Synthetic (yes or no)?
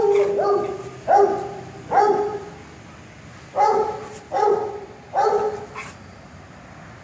no